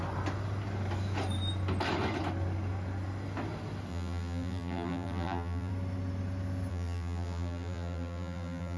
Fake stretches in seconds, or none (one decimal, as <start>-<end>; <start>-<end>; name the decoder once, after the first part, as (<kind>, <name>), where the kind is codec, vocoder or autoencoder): 3.9-5.7 (vocoder, BigVGAN v2); 6.7-8.8